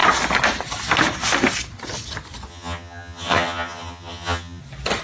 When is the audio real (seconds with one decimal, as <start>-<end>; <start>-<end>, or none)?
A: 0.0-2.5; 4.6-5.0